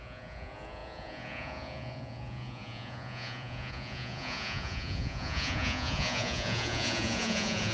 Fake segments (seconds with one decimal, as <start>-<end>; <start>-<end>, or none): 0.0-7.7